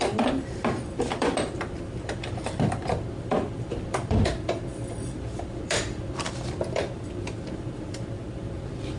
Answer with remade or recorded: remade